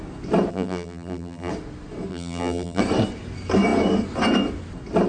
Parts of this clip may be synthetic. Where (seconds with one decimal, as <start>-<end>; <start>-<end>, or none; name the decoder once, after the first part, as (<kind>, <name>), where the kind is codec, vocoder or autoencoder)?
0.5-1.5 (vocoder, BigVGAN v2); 2.1-2.8